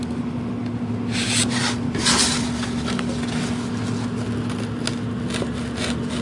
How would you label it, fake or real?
real